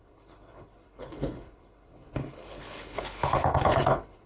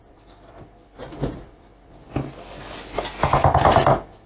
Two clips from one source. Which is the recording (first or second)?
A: second